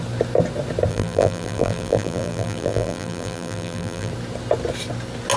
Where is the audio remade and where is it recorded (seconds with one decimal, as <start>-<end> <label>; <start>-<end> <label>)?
0.0-0.9 recorded; 0.9-4.1 remade; 4.1-5.4 recorded